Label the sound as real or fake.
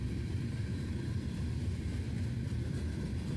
fake